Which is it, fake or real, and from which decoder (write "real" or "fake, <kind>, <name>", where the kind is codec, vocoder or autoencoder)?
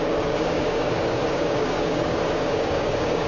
fake, codec, DAC